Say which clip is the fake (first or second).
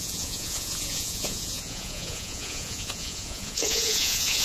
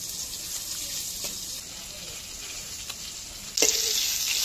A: first